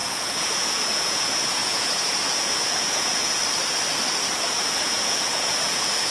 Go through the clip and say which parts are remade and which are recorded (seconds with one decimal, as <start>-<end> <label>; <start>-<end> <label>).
0.0-3.4 remade; 3.4-4.5 recorded; 4.5-6.1 remade